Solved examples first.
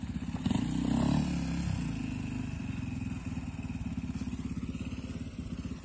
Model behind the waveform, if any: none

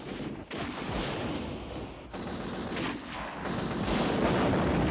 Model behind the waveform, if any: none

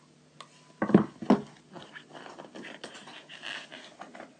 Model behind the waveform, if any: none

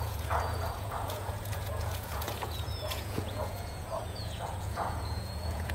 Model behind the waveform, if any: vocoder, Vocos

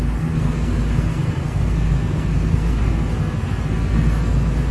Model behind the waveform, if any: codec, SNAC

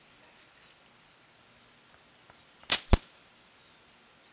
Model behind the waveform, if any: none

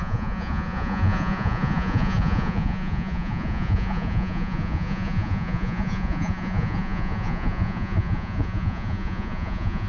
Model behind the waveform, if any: vocoder, Vocos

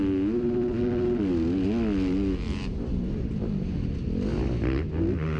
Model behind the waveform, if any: none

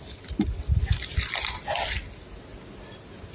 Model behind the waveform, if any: none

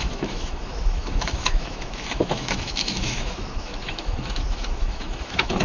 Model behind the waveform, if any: autoencoder, DAC-VAE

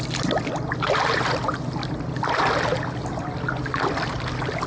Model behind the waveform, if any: none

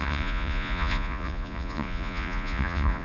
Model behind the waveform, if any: vocoder, Vocos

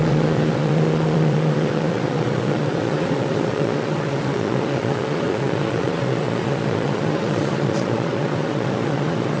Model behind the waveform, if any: vocoder, Vocos